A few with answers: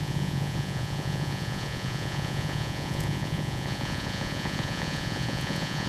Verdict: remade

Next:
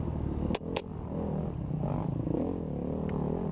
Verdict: recorded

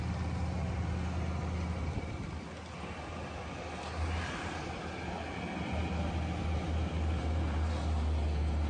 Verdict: recorded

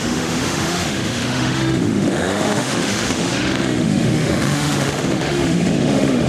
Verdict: remade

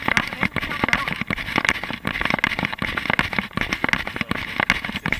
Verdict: recorded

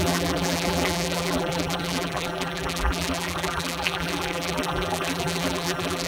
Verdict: remade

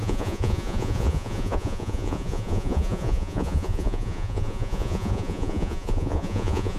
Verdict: remade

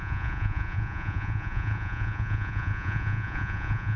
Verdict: remade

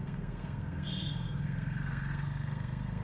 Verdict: remade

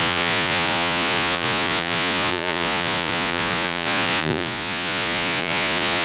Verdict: remade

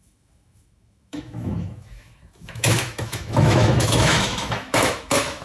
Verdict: remade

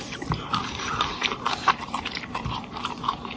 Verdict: remade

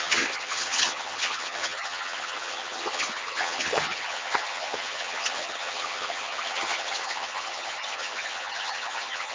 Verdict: remade